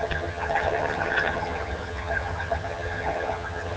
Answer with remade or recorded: remade